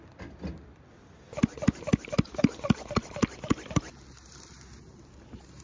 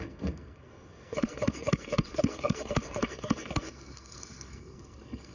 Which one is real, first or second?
first